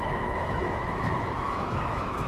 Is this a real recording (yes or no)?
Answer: no